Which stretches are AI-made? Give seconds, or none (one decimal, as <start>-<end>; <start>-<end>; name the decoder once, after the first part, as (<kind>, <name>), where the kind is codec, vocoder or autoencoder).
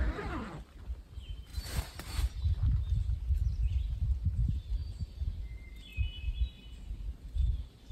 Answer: 1.5-2.2 (vocoder, BigVGAN v2); 4.8-5.4